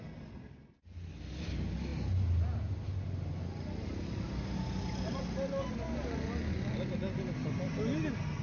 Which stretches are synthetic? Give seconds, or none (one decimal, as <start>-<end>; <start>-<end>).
none